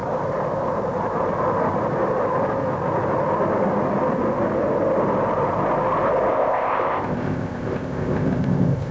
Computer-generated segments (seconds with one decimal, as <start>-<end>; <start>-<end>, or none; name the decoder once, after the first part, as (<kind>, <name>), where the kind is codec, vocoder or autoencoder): 6.3-8.9 (codec, ZipCodec)